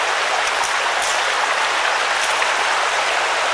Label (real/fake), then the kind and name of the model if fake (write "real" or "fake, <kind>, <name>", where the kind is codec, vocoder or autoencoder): real